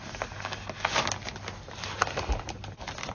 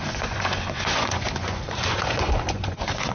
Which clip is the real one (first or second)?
first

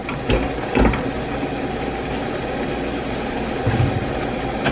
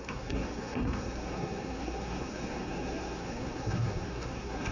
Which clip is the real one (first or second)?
first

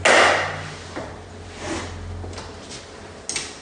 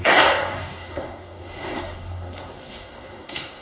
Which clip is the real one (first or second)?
first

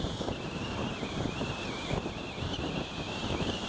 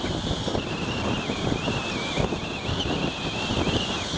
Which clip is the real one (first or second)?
second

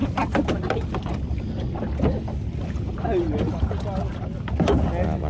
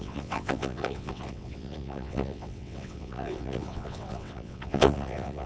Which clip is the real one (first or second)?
first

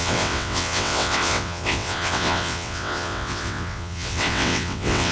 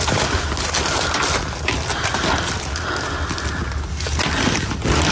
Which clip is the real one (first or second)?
second